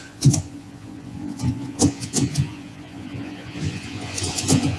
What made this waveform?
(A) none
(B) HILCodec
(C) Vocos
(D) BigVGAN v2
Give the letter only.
C